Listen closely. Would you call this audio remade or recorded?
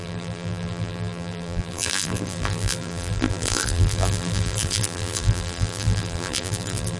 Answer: remade